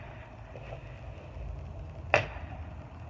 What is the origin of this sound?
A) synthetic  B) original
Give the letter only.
B